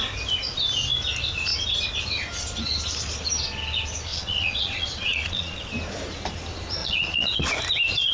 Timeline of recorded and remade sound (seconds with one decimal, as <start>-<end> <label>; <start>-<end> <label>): 0.0-4.1 recorded; 4.1-5.7 remade; 5.7-6.8 recorded; 6.8-7.5 remade; 7.5-8.1 recorded